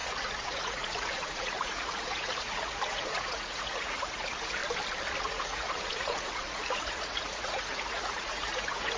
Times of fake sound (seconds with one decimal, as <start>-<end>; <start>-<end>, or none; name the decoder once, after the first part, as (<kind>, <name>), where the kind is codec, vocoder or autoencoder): 0.0-4.6 (vocoder, Vocos); 5.2-9.0